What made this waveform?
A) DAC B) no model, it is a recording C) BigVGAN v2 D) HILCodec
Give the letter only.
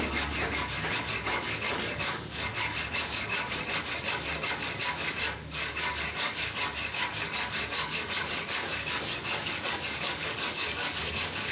A